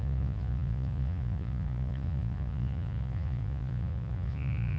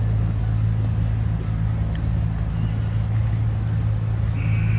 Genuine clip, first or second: second